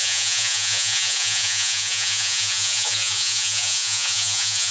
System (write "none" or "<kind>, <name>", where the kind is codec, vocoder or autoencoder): vocoder, Vocos